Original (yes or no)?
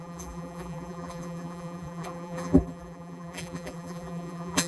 no